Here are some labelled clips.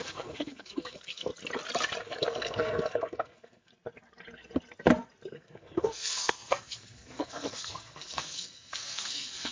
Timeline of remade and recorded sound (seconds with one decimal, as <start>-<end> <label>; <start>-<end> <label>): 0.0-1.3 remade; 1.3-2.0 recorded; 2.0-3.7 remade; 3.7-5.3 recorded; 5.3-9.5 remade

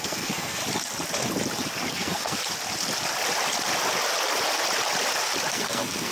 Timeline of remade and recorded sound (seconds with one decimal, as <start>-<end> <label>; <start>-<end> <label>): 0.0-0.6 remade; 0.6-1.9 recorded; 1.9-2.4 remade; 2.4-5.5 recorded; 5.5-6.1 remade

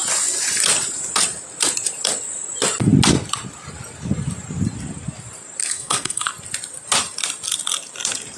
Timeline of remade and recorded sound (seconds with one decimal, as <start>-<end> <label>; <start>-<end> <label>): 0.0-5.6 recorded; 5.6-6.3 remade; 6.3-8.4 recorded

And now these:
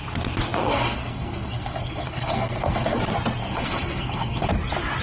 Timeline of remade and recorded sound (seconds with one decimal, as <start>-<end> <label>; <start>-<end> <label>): 0.0-0.6 recorded; 0.6-3.0 remade; 3.0-3.4 recorded; 3.4-4.5 remade; 4.5-5.0 recorded

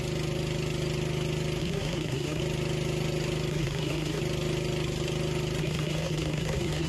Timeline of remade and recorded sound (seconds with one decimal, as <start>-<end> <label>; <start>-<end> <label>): 0.0-1.6 recorded; 1.6-2.4 remade; 2.4-3.5 recorded; 3.5-4.2 remade; 4.2-5.6 recorded; 5.6-6.9 remade

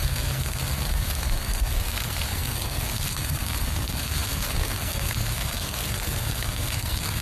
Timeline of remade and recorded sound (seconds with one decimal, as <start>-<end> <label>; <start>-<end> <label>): 0.0-7.2 remade

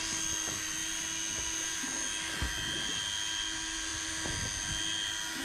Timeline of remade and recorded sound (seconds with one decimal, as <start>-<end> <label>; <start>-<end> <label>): 0.0-5.4 recorded